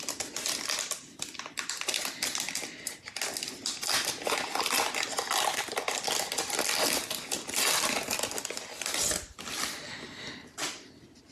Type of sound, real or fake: real